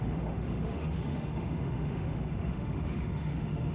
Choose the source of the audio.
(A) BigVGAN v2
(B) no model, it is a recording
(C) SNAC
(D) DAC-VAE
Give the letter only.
D